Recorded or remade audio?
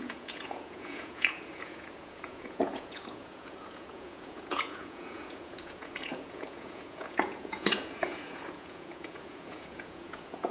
remade